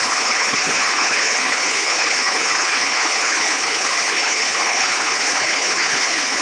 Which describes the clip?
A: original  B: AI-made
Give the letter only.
B